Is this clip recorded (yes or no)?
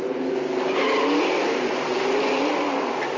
yes